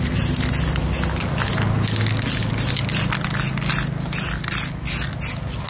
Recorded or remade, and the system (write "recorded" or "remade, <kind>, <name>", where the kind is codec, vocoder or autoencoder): recorded